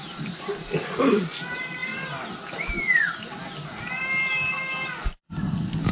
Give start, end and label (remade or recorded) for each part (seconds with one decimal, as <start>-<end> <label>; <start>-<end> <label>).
0.0-5.9 recorded